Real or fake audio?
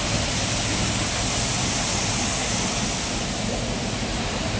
real